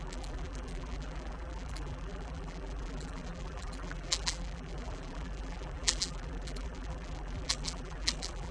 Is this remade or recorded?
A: remade